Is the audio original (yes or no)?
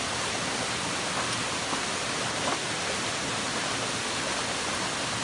yes